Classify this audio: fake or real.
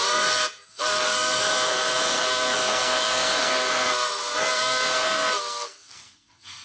fake